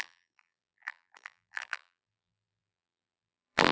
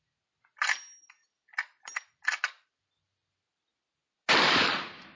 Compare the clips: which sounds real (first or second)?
second